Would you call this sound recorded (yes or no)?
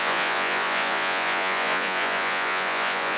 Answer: no